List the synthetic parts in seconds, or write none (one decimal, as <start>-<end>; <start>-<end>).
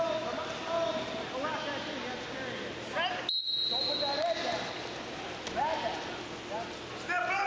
none